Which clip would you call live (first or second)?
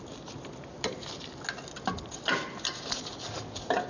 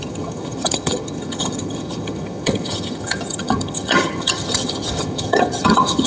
first